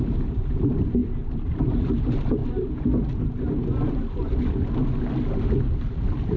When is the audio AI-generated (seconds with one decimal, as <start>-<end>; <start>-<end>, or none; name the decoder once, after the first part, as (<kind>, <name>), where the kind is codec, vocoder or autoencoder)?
0.0-2.4 (vocoder, BigVGAN v2); 3.9-4.3; 5.4-6.4